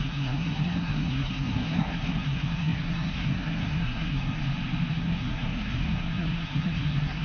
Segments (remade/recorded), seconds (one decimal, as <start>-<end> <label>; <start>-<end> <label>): 0.0-4.4 remade; 4.4-4.9 recorded; 4.9-7.2 remade